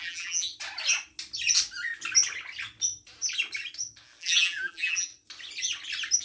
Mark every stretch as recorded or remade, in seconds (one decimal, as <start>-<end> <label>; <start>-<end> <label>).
0.0-0.5 remade; 0.5-4.2 recorded; 4.2-5.1 remade; 5.1-6.2 recorded